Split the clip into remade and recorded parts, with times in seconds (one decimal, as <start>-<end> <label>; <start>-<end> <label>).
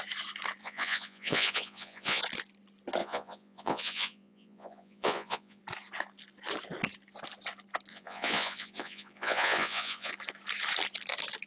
0.0-0.6 recorded; 0.6-2.2 remade; 2.2-3.0 recorded; 3.0-5.6 remade; 5.6-7.9 recorded; 7.9-10.1 remade; 10.1-11.5 recorded